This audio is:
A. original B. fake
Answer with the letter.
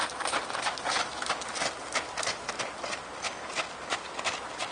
B